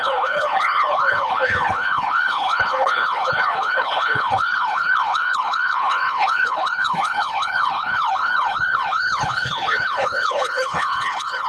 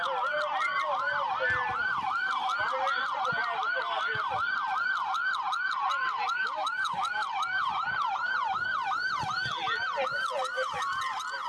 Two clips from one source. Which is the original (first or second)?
second